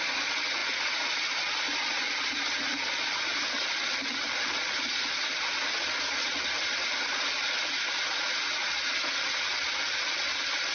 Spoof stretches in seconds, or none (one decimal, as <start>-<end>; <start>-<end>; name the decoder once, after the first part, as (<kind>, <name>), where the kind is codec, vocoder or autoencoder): none